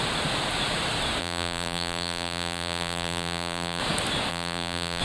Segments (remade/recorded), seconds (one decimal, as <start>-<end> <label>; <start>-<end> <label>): 0.0-1.2 recorded; 1.2-3.8 remade; 3.8-4.3 recorded; 4.3-5.0 remade